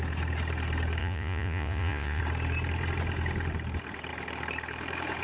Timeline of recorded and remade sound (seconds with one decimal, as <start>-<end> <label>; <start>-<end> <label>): 0.0-1.0 recorded; 1.0-2.2 remade; 2.2-5.2 recorded